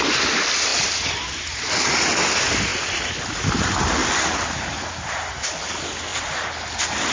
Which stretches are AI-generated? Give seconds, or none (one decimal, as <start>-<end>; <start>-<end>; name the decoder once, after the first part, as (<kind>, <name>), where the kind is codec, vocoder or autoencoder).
none